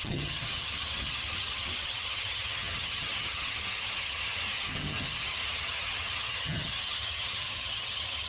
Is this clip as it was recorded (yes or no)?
no